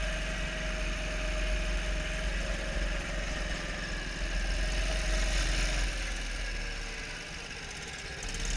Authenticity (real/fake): real